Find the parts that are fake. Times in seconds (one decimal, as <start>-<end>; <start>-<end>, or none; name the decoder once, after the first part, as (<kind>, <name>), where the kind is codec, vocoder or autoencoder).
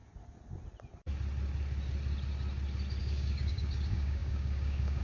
3.0-5.0 (codec, DAC)